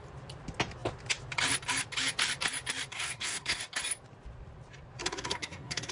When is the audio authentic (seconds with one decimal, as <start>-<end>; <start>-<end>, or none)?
0.0-2.9; 3.6-5.0